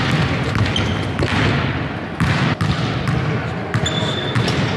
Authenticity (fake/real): real